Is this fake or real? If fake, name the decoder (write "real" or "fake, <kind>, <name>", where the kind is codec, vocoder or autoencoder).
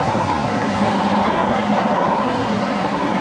fake, codec, SNAC